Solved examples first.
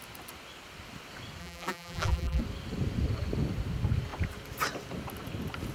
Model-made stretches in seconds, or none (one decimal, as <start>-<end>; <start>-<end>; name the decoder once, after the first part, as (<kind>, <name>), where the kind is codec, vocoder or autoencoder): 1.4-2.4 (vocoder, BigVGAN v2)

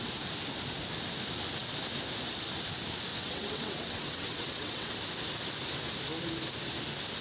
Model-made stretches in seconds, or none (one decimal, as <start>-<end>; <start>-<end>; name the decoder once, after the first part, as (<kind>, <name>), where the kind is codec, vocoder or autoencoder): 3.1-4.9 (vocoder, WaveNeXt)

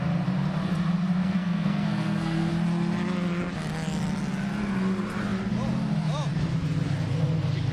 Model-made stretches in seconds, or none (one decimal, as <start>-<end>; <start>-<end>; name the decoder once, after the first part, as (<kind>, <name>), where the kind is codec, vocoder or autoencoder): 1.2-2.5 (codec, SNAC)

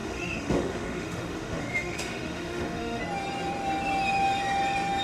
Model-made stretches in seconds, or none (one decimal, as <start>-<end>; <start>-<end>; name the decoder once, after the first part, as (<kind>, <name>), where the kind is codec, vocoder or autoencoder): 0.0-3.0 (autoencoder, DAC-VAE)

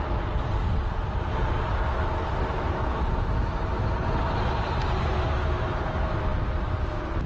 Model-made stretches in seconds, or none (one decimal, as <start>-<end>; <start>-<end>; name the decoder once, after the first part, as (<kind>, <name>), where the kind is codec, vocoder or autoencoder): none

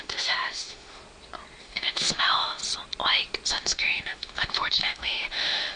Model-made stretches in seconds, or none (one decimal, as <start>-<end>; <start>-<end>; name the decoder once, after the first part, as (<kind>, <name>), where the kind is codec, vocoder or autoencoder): 0.0-1.0 (autoencoder, DAC-VAE); 1.6-2.6; 3.5-5.8

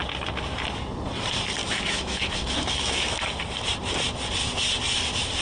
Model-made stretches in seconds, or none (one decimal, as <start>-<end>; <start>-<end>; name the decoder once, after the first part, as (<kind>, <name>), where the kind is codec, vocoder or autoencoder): 1.6-3.4 (autoencoder, DAC-VAE)

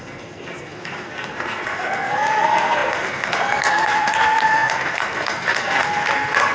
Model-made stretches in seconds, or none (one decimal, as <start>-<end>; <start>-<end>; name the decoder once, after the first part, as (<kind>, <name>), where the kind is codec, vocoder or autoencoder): 0.0-6.5 (codec, SNAC)